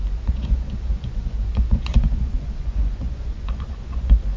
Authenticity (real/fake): fake